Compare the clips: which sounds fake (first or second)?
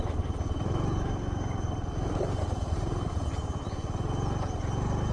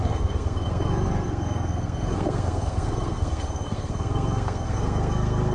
second